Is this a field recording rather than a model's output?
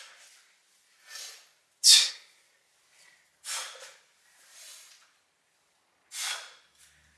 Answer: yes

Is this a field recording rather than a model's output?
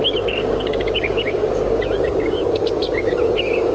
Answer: no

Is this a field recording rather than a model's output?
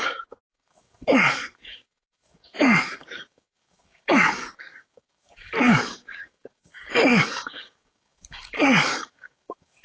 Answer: no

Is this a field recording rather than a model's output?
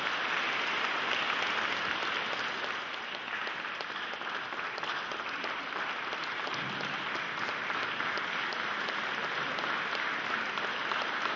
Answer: yes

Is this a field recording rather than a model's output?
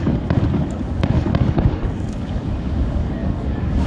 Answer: no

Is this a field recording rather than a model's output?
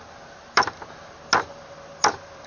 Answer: yes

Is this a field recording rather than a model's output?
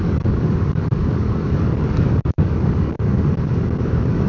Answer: no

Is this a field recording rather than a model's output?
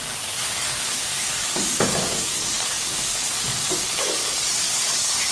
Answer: no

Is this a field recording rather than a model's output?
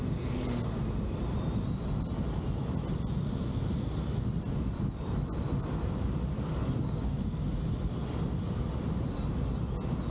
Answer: yes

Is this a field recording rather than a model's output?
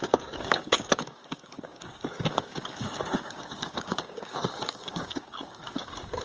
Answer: no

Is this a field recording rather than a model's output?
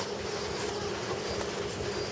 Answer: yes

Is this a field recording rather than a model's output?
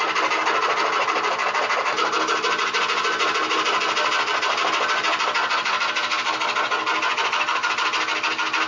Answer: yes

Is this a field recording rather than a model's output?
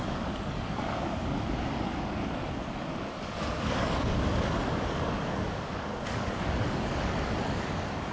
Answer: no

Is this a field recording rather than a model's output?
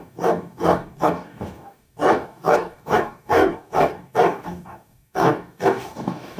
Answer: no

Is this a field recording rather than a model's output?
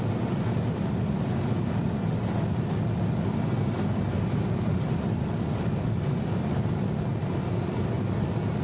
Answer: yes